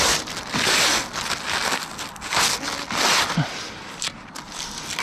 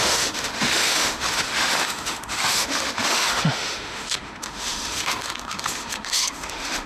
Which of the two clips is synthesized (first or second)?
second